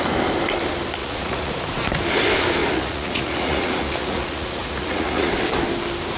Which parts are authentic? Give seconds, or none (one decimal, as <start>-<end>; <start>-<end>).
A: 0.0-1.0; 1.5-2.6; 5.3-6.2